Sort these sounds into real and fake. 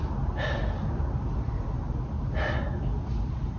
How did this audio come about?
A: real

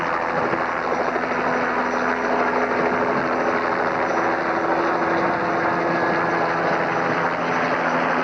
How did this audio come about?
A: real